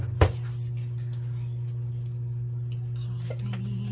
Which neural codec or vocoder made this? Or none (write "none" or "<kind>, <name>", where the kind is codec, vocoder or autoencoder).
none